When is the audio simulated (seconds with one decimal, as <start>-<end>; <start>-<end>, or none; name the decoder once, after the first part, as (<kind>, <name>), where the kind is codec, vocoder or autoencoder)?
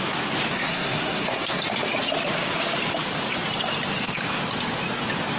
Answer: 0.5-1.6 (codec, SNAC)